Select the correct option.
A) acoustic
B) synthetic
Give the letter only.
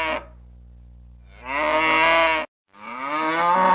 A